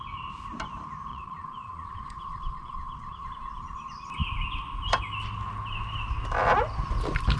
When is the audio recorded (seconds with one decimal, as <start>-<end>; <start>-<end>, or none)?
0.0-1.1; 3.3-7.4